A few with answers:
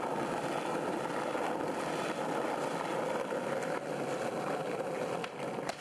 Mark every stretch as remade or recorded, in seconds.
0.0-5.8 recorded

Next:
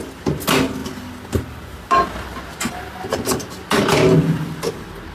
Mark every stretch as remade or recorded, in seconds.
0.0-5.1 recorded